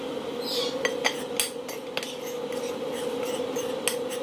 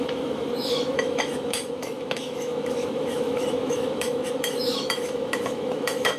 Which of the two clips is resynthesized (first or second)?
second